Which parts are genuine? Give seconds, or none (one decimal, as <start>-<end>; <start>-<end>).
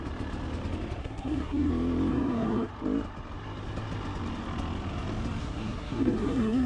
0.0-1.0; 1.7-2.1; 2.7-5.4